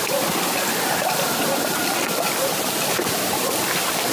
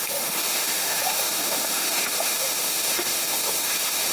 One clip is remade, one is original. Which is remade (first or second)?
second